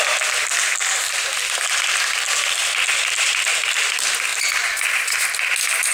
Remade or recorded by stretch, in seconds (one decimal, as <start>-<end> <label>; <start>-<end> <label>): 0.0-5.9 recorded